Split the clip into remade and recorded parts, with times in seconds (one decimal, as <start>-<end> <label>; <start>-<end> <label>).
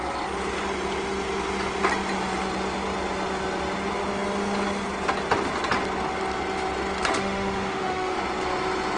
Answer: 0.0-7.1 recorded; 7.1-8.2 remade; 8.2-9.0 recorded